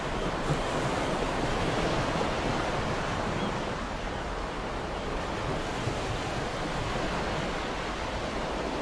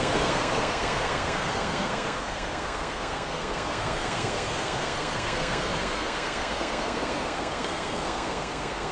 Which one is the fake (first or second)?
second